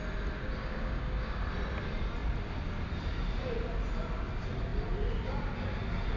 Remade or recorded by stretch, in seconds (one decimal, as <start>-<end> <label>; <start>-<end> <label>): 0.0-0.6 recorded; 0.6-1.4 remade; 1.4-6.2 recorded